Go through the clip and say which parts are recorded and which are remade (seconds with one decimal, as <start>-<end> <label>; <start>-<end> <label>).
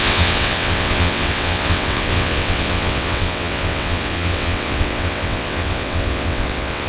0.0-6.9 remade